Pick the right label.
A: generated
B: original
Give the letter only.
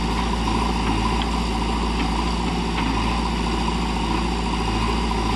B